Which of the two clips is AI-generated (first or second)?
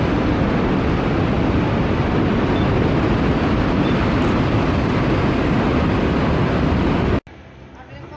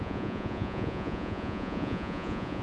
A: second